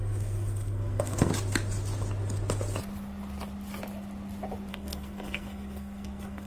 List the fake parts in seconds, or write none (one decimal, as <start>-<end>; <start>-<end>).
0.0-1.3; 4.7-6.5